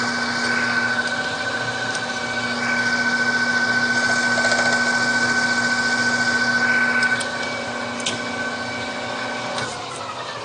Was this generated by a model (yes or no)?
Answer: no